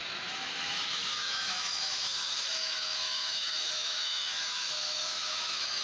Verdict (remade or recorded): remade